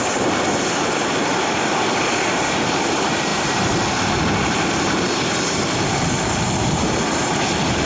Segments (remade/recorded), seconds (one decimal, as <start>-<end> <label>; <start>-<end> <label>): 0.0-7.9 remade